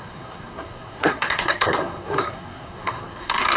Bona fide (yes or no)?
no